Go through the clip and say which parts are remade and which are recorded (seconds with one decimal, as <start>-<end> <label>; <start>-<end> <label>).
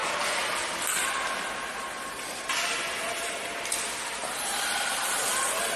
0.0-0.7 remade; 0.7-4.2 recorded; 4.2-4.8 remade; 4.8-5.8 recorded